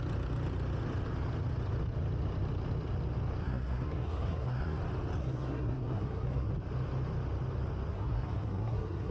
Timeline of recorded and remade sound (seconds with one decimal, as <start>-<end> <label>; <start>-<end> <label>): 0.0-3.4 recorded; 3.4-4.8 remade; 4.8-5.2 recorded; 5.2-6.5 remade; 6.5-7.9 recorded; 7.9-9.1 remade